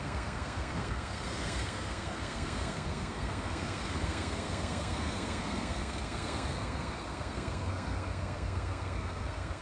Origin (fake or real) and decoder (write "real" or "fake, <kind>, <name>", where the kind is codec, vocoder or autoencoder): fake, codec, SNAC